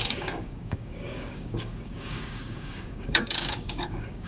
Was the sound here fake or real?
fake